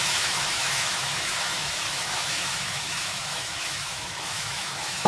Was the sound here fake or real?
fake